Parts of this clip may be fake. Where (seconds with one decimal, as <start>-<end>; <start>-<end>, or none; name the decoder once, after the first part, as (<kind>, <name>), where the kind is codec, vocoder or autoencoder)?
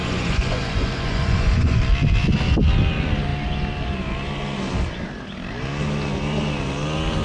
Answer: 0.0-1.8 (vocoder, Vocos)